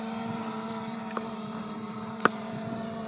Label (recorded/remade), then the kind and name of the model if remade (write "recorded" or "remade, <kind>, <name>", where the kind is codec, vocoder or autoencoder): remade, vocoder, BigVGAN v2